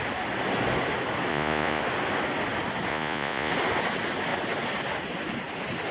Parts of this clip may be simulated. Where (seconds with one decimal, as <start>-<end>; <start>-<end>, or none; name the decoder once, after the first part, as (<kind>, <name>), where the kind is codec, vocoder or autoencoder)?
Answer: 1.3-1.8 (vocoder, Vocos); 2.9-3.5